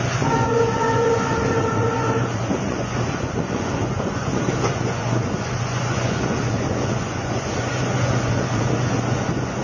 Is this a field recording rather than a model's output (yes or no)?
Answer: no